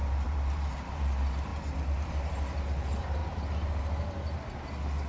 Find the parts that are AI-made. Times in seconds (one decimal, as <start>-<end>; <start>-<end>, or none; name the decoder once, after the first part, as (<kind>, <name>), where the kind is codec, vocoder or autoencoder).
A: 0.0-1.0 (vocoder, BigVGAN v2)